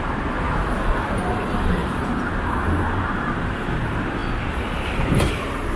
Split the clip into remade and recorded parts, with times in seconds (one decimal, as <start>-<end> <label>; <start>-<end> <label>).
0.0-4.2 remade; 4.2-5.3 recorded; 5.3-5.8 remade